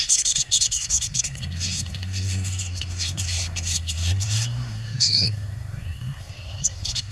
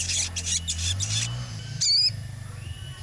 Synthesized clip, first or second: first